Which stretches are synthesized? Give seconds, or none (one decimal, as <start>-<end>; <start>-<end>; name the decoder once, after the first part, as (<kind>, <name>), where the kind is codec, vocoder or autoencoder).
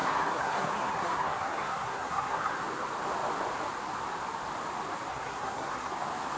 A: 0.0-2.5 (codec, SNAC); 5.1-5.9